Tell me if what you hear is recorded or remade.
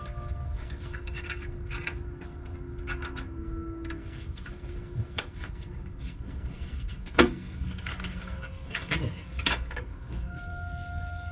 remade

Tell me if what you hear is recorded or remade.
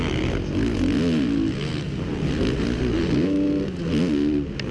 recorded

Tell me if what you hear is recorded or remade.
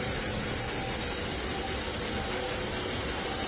recorded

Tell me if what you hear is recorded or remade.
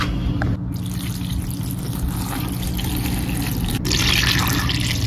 recorded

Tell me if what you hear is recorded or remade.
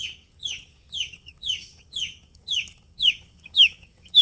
remade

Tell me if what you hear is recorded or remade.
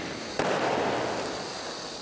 recorded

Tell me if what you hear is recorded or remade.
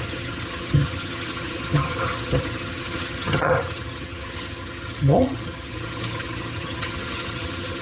remade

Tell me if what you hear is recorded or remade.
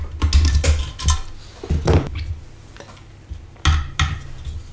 recorded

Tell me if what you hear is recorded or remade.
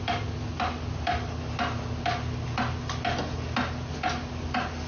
recorded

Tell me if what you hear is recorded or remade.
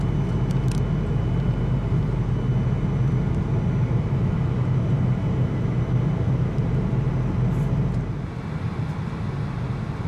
recorded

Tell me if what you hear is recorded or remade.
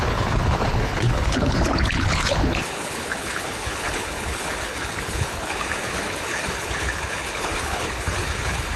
remade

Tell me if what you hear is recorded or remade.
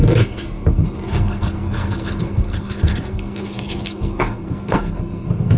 remade